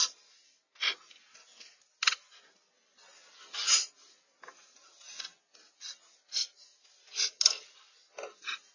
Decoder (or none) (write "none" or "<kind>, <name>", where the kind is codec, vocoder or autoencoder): none